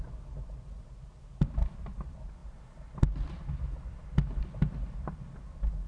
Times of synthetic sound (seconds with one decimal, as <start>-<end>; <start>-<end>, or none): none